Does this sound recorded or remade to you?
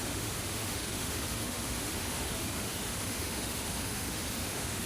remade